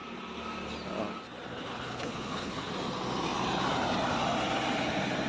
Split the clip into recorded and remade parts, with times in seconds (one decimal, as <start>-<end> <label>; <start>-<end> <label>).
0.0-1.5 recorded; 1.5-2.7 remade; 2.7-5.3 recorded